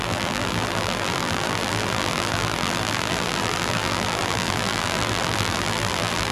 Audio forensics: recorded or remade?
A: remade